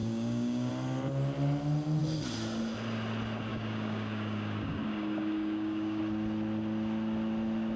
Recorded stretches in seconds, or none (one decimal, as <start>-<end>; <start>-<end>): 0.7-3.5; 6.0-7.8